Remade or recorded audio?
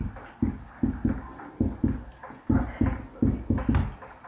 recorded